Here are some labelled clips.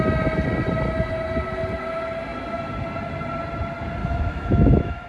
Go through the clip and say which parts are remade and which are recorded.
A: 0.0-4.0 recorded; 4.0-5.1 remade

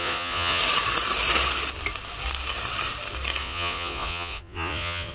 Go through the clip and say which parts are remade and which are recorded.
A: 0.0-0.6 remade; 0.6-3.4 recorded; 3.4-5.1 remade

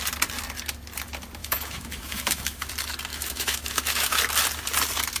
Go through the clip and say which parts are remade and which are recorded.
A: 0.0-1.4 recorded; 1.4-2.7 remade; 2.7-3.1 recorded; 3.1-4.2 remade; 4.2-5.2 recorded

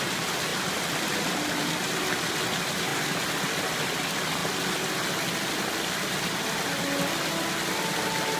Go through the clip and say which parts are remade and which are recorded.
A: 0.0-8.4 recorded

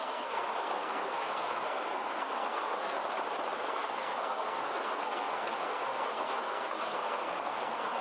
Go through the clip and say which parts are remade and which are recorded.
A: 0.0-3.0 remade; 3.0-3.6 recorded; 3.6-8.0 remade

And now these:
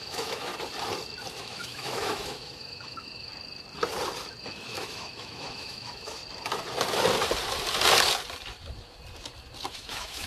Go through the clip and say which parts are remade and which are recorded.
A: 0.0-0.5 remade; 0.5-1.4 recorded; 1.4-3.3 remade; 3.3-4.4 recorded; 4.4-6.2 remade; 6.2-9.7 recorded; 9.7-10.3 remade

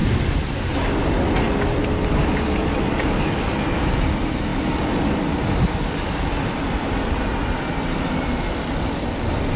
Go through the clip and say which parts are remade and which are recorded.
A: 0.0-0.7 remade; 0.7-9.6 recorded

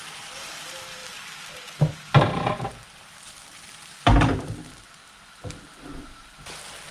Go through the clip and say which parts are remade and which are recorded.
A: 0.0-1.0 remade; 1.0-1.5 recorded; 1.5-4.6 remade; 4.6-6.9 recorded